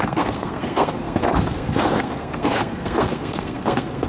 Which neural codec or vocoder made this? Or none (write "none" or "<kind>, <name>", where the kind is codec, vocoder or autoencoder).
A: codec, SNAC